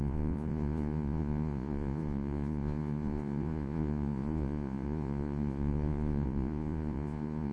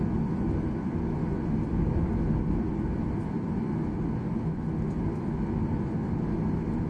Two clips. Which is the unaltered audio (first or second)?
second